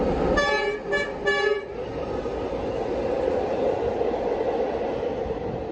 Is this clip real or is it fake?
real